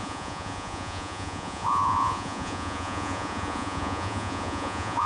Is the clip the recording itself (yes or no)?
no